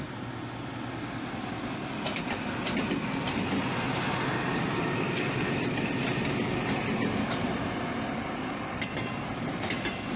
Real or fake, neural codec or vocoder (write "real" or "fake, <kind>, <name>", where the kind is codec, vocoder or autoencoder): real